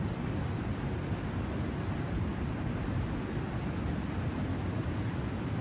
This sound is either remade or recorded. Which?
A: recorded